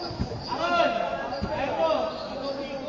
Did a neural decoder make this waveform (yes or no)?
no